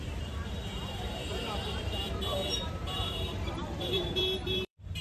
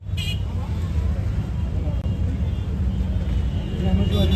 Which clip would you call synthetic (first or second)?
first